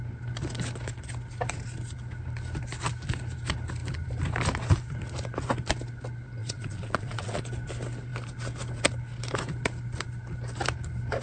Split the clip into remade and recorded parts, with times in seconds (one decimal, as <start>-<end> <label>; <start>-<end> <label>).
0.0-6.4 recorded; 6.4-7.4 remade; 7.4-11.2 recorded